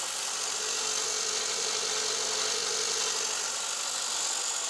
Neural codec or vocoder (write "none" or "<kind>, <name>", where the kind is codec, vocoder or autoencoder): none